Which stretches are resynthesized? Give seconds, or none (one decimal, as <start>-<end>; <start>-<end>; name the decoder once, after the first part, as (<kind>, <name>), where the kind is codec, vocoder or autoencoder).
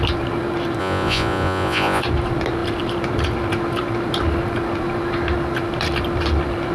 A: 0.8-2.0 (vocoder, Vocos)